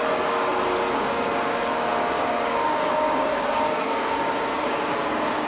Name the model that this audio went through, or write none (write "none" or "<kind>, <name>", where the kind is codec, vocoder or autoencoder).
codec, DAC